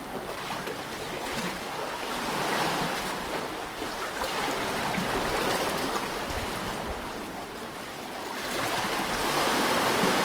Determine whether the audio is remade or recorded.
recorded